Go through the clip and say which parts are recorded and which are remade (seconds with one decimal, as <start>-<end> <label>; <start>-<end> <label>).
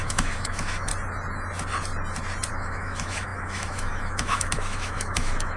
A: 0.0-0.9 remade; 0.9-2.5 recorded; 2.5-5.6 remade